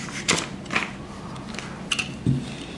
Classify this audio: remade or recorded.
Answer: recorded